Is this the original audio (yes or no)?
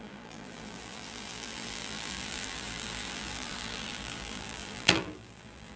no